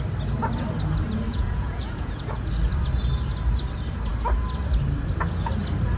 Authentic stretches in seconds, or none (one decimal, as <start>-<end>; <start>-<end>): 0.0-1.3; 2.5-6.0